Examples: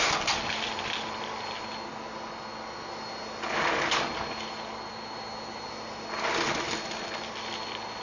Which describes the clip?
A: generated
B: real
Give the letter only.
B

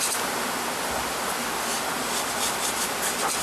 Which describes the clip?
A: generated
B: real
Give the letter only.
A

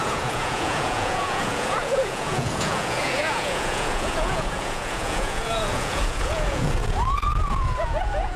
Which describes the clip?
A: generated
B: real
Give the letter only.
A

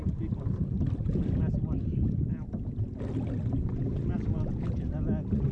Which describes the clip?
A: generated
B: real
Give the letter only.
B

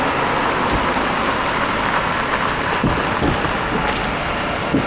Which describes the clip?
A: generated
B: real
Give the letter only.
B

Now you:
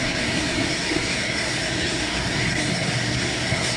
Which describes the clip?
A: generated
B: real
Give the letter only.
A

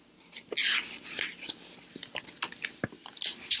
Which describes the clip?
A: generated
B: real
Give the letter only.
B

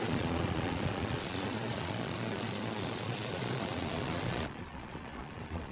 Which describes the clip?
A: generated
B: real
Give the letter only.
A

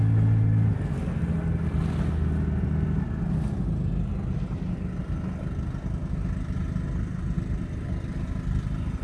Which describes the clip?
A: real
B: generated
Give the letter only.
A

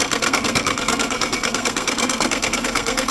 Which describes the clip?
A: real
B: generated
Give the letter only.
B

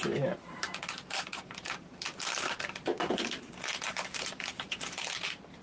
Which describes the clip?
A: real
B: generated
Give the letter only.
B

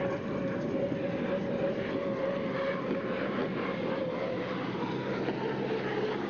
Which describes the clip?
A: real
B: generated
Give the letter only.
A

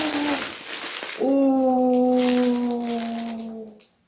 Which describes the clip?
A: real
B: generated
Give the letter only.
A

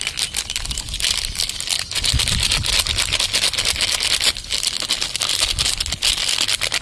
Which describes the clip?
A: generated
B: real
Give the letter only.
B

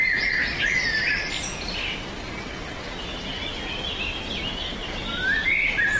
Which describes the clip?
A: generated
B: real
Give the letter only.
B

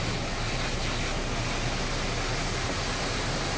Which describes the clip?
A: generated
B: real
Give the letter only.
B